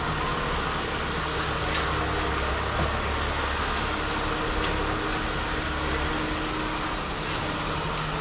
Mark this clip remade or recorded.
recorded